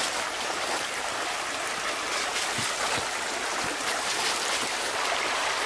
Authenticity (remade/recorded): recorded